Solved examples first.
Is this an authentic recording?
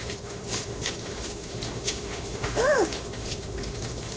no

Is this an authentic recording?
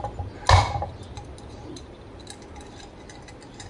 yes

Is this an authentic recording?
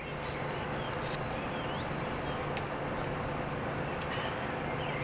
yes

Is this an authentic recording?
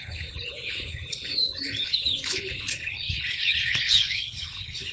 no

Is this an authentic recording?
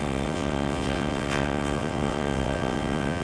no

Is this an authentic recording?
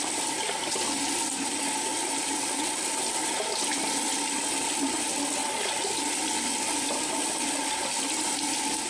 yes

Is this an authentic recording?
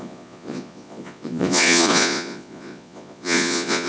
no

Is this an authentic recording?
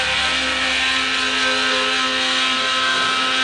yes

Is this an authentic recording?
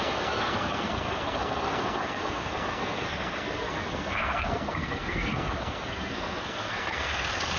no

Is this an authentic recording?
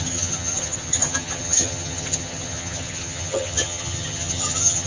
no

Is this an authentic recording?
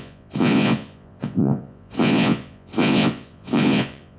no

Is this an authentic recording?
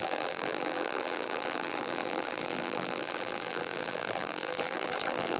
no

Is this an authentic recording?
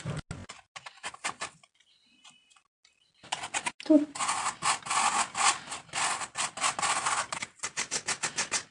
yes